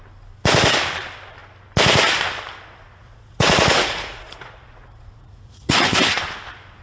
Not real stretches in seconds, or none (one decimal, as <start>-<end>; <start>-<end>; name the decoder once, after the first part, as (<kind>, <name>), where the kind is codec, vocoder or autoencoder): 2.9-6.0 (vocoder, Vocos)